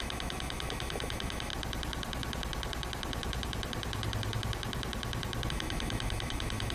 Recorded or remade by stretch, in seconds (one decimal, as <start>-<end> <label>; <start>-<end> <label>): 0.0-1.5 remade; 1.5-5.5 recorded; 5.5-6.7 remade